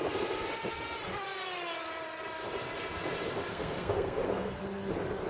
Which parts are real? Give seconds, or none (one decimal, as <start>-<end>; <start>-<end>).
0.0-3.5; 4.6-5.3